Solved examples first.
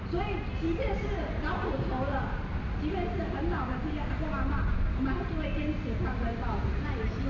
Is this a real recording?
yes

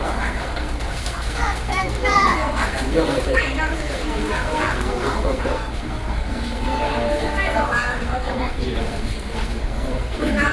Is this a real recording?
no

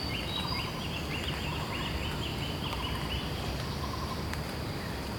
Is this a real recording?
yes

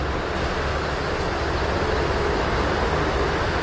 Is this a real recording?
yes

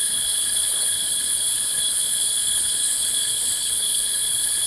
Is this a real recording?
no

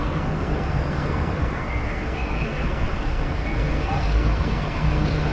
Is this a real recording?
no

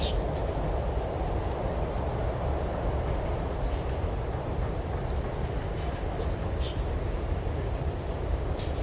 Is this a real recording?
yes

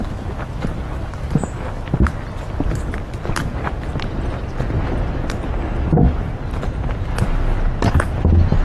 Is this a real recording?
yes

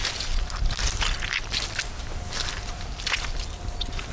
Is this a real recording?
yes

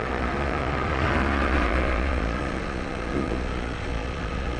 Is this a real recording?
no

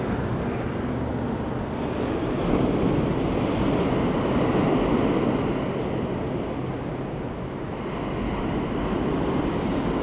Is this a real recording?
yes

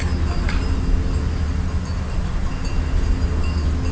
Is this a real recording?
yes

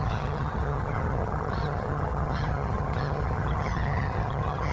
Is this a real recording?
no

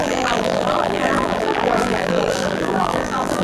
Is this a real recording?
no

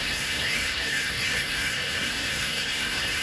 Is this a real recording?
no